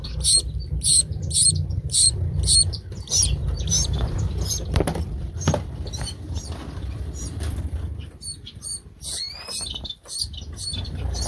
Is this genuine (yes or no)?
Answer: no